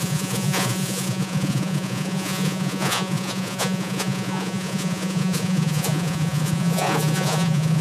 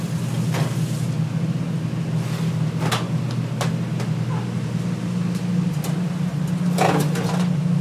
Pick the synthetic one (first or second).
first